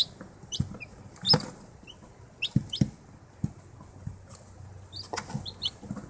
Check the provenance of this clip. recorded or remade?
recorded